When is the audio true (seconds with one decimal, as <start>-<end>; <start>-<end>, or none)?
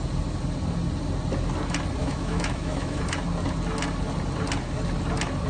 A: 0.0-2.0; 3.0-5.5